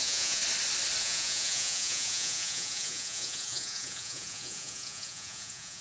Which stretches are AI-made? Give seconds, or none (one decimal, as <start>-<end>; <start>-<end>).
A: 0.0-0.4; 1.0-5.8